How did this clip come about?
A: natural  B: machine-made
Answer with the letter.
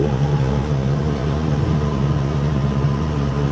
B